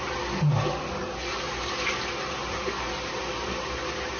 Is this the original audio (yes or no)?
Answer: yes